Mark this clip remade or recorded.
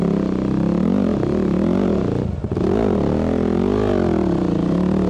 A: recorded